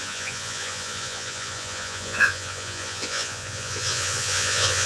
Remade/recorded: remade